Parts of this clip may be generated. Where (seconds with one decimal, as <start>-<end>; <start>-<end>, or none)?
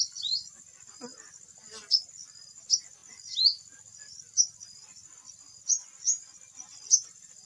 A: none